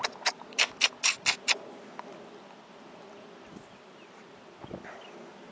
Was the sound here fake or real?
real